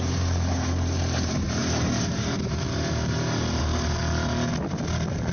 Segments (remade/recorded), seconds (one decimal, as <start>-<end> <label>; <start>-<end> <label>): 0.0-4.0 remade; 4.0-5.3 recorded